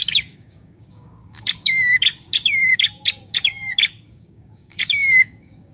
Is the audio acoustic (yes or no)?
no